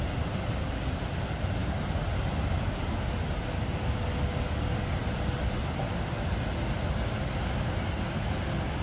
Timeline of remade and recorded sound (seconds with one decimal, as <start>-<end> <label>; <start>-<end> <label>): 0.0-8.8 recorded